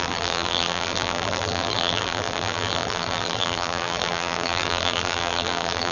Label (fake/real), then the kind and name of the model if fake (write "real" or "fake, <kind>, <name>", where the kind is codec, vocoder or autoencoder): fake, vocoder, BigVGAN v2